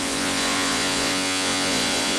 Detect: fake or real fake